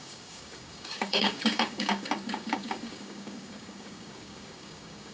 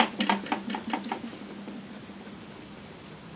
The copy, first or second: first